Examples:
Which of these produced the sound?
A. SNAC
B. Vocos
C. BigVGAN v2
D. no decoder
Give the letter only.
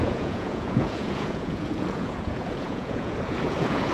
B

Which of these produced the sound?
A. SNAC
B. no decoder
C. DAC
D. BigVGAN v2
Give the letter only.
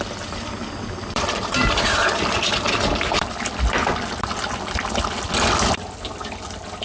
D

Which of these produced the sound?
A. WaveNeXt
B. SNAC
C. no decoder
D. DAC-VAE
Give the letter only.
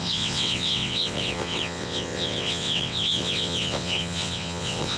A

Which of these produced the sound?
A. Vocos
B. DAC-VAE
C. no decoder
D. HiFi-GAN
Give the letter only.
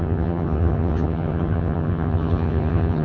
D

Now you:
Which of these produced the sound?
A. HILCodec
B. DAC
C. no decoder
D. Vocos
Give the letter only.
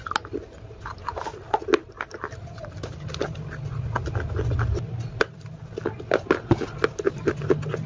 C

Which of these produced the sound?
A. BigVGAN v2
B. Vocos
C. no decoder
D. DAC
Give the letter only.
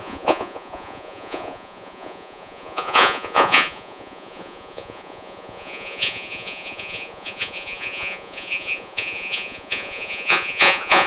B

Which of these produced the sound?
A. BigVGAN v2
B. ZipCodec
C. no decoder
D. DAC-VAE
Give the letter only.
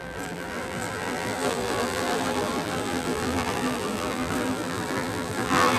A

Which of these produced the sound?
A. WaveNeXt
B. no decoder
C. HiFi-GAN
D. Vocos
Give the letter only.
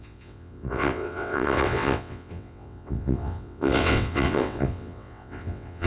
A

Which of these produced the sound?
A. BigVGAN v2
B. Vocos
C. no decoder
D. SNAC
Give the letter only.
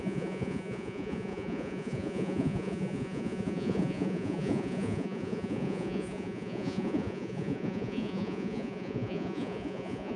B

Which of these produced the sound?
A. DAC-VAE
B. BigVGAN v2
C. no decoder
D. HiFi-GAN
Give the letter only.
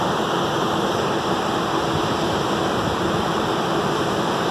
B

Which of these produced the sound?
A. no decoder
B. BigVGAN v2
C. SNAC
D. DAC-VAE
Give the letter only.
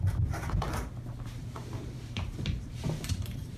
B